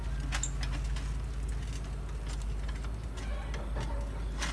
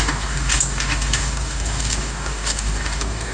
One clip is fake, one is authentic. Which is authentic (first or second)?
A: first